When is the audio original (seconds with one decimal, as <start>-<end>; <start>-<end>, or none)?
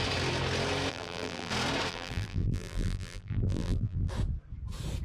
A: 0.0-0.9; 1.5-1.9; 4.1-5.0